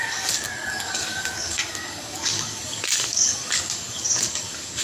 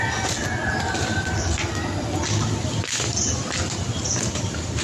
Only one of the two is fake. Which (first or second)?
first